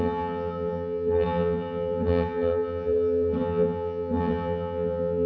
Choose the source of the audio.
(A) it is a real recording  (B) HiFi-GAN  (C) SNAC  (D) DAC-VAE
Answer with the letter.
B